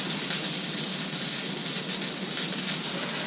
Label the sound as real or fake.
real